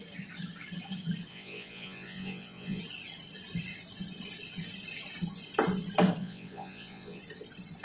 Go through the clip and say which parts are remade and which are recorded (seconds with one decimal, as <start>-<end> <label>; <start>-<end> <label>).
0.0-1.3 recorded; 1.3-2.8 remade; 2.8-6.2 recorded; 6.2-7.2 remade; 7.2-7.8 recorded

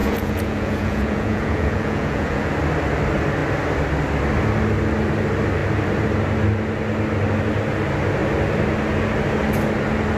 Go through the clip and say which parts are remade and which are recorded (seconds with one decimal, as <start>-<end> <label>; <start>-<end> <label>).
0.0-2.5 remade; 2.5-10.2 recorded

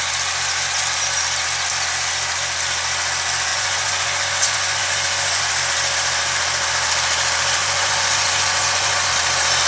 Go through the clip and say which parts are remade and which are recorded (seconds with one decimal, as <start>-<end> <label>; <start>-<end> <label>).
0.0-3.5 recorded; 3.5-5.4 remade; 5.4-7.6 recorded; 7.6-9.1 remade; 9.1-9.7 recorded

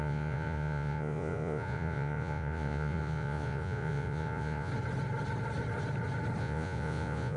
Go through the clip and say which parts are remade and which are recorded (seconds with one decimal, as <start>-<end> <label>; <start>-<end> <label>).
0.0-4.7 remade; 4.7-6.4 recorded; 6.4-7.4 remade